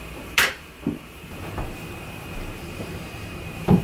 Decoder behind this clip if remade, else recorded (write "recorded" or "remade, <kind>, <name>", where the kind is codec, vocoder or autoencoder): remade, vocoder, BigVGAN v2